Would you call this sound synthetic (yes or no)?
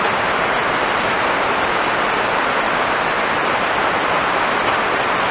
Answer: no